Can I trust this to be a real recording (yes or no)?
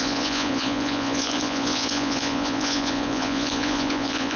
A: no